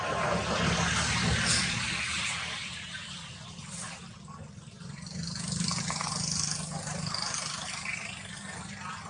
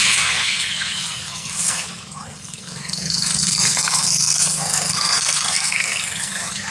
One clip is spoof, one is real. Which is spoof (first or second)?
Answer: second